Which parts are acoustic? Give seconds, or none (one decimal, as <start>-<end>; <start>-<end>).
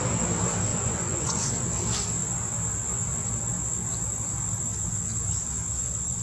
0.0-0.7; 1.5-6.2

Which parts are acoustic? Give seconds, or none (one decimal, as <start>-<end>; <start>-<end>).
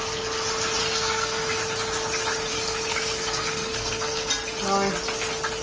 0.0-0.8; 1.5-2.5; 4.3-5.6